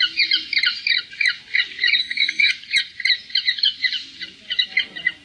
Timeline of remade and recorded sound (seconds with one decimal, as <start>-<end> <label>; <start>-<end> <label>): 0.0-2.0 recorded; 2.0-2.5 remade; 2.5-5.2 recorded